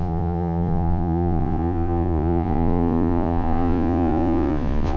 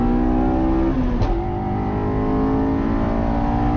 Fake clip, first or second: first